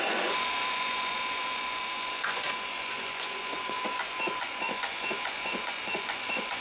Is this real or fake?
fake